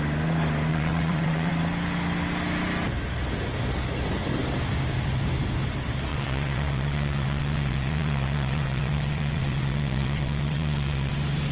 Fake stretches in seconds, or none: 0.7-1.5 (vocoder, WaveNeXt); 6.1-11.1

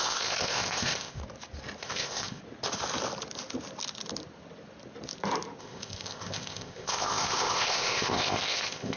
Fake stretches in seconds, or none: 0.0-1.2 (codec, ZipCodec); 1.8-2.4; 5.6-9.0

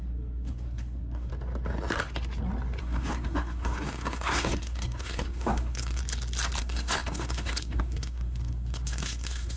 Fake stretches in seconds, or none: 0.0-1.3 (codec, SNAC); 2.8-6.0; 6.6-9.6

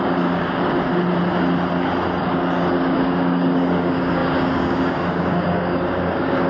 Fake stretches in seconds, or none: 0.0-0.9 (codec, DAC); 2.2-6.5

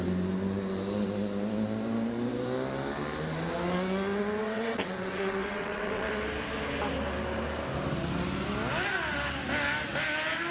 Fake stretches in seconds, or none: 4.4-6.1 (vocoder, WaveNeXt)

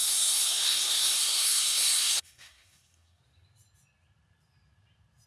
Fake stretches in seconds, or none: 0.0-3.2 (codec, SNAC)

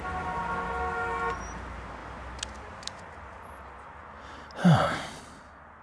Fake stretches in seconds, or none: none